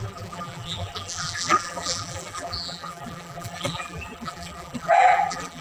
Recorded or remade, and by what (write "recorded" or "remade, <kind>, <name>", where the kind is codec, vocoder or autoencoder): remade, vocoder, BigVGAN v2